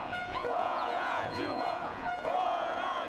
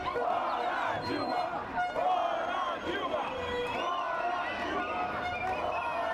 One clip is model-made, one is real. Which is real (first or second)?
second